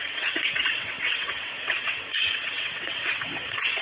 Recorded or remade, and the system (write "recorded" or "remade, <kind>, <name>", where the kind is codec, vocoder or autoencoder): remade, vocoder, WaveNeXt